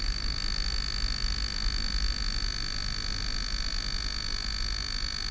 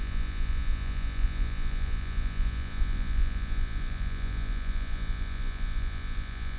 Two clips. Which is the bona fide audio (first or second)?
first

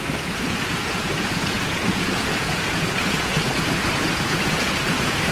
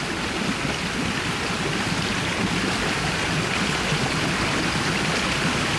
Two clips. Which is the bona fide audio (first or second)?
second